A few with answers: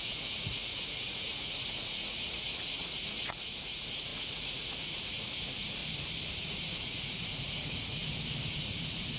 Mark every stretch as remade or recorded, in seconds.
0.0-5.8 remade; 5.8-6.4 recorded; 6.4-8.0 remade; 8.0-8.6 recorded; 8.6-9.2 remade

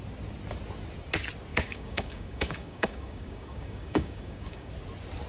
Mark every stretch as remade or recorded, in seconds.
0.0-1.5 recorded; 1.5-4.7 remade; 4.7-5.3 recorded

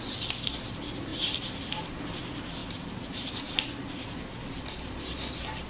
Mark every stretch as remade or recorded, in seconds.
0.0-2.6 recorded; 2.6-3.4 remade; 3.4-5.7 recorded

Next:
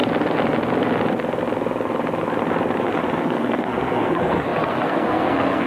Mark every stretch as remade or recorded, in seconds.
0.0-3.2 recorded; 3.2-5.7 remade

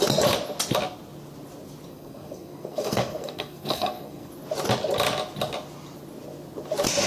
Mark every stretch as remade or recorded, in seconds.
0.0-1.9 recorded; 1.9-4.3 remade; 4.3-7.1 recorded

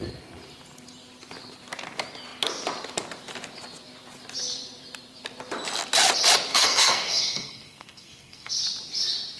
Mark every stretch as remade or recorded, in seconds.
0.0-6.5 recorded; 6.5-8.5 remade; 8.5-9.4 recorded

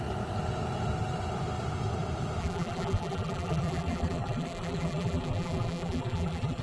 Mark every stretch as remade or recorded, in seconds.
0.0-2.4 recorded; 2.4-6.6 remade